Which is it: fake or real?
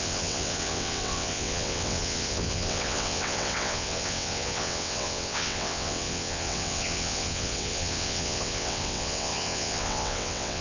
fake